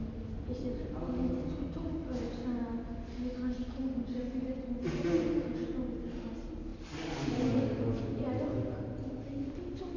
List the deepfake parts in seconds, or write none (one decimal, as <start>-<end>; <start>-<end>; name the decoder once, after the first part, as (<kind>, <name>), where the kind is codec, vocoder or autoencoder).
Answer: none